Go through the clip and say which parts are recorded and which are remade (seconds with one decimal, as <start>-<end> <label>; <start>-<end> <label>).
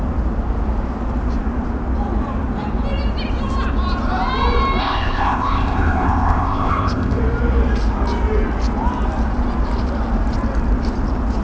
0.0-4.8 recorded; 4.8-7.2 remade; 7.2-11.4 recorded